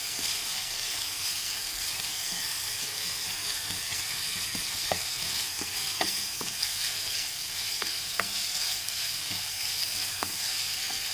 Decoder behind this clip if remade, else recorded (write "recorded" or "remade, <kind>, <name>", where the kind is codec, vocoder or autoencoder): remade, codec, SNAC